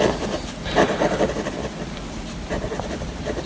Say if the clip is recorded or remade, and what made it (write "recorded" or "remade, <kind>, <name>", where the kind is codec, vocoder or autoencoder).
recorded